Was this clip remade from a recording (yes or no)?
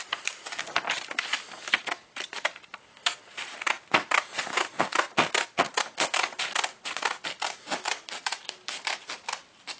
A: no